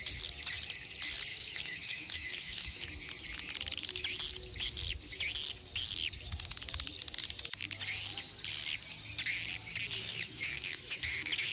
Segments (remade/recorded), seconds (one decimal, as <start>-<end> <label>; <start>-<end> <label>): 0.0-1.3 recorded; 1.3-2.9 remade; 2.9-10.0 recorded; 10.0-11.5 remade